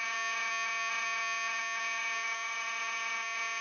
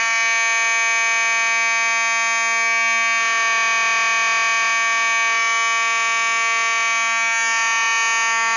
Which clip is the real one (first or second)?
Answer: second